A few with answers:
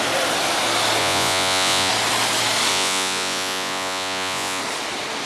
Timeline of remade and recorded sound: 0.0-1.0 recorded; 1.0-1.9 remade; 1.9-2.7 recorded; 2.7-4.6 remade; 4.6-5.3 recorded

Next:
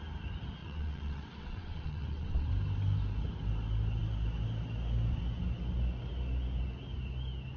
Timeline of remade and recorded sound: 0.0-0.6 recorded; 0.6-2.5 remade; 2.5-7.6 recorded